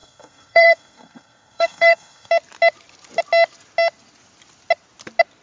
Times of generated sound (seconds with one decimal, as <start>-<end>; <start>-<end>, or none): 0.0-2.3